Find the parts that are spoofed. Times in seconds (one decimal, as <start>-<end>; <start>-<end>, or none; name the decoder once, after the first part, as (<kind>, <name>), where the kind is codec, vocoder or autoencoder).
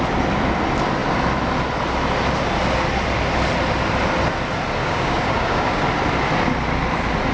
4.8-5.8 (codec, DAC)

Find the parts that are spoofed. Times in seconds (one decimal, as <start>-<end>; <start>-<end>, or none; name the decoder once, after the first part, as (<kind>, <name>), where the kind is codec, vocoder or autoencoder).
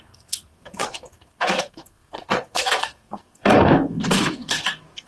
0.0-5.1 (codec, SNAC)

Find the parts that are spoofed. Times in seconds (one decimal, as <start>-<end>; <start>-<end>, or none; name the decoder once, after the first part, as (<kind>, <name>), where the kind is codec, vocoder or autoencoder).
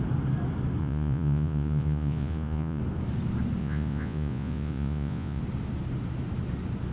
0.8-2.8 (vocoder, Vocos); 3.6-5.4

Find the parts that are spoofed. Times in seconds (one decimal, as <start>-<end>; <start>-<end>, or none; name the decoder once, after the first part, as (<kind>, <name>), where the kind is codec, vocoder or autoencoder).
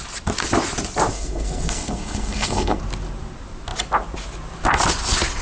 1.1-2.8 (codec, SNAC)